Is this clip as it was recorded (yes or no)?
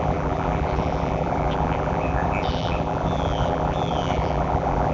no